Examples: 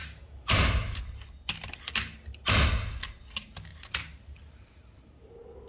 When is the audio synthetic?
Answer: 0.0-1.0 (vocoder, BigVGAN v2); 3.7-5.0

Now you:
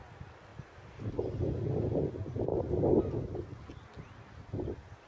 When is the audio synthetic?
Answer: 0.5-1.0 (vocoder, BigVGAN v2)

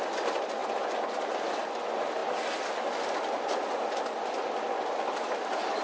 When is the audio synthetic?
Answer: none

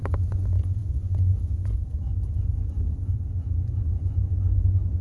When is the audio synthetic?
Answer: 0.0-3.1 (vocoder, Vocos); 3.8-5.0

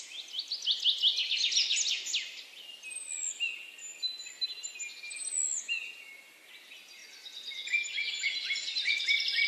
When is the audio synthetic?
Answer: none

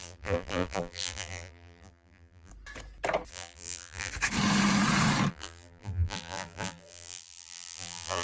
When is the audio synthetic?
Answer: 0.0-2.5 (vocoder, BigVGAN v2); 3.3-4.1; 5.3-8.2

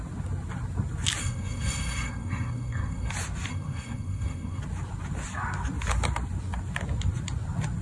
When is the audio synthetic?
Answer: 1.2-3.1 (codec, SNAC); 3.5-4.6

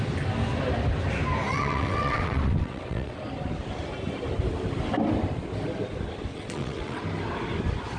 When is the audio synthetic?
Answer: 1.5-3.2 (vocoder, WaveNeXt); 6.3-7.0